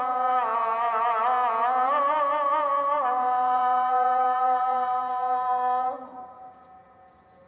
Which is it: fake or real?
fake